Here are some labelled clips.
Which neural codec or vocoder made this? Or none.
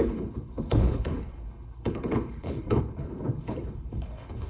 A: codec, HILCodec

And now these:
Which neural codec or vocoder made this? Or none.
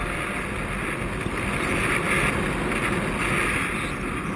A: none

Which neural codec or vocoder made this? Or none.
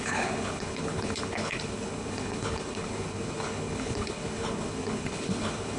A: codec, HILCodec